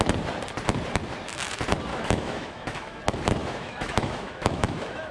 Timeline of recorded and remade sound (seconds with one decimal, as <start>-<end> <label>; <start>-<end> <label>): 0.0-1.9 recorded; 1.9-3.0 remade; 3.0-3.4 recorded; 3.4-5.1 remade